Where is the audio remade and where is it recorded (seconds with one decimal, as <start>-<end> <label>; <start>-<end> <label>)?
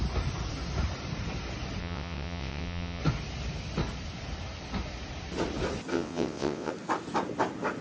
0.0-1.8 recorded; 1.8-3.0 remade; 3.0-5.9 recorded; 5.9-6.7 remade; 6.7-7.8 recorded